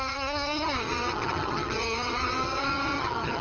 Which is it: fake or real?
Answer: fake